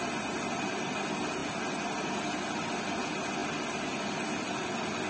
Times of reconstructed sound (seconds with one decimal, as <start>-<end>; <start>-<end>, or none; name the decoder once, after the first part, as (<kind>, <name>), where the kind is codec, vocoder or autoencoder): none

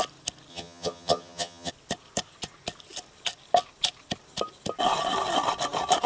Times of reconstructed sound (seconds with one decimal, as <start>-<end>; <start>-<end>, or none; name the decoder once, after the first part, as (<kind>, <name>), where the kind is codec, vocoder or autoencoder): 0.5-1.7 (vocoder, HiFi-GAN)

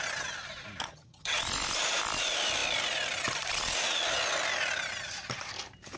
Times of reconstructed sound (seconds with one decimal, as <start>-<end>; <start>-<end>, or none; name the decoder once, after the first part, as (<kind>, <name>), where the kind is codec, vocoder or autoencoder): 0.9-1.4 (vocoder, HiFi-GAN)

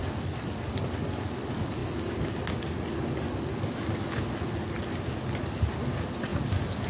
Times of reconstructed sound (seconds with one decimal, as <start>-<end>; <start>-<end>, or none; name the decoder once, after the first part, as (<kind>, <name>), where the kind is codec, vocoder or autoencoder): none

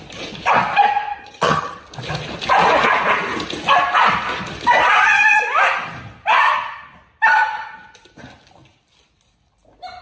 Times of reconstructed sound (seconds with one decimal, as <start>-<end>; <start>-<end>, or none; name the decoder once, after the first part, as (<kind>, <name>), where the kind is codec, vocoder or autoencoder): 1.2-1.8 (vocoder, HiFi-GAN)

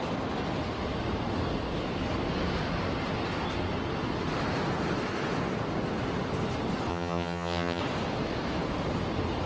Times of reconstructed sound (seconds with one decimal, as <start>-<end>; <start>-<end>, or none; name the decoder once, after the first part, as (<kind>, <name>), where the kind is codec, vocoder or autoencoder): 6.9-7.8 (vocoder, HiFi-GAN)